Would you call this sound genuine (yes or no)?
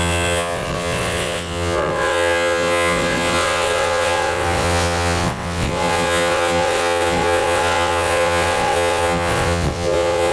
no